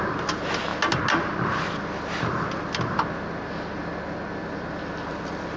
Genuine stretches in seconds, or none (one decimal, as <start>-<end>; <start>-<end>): 0.0-4.4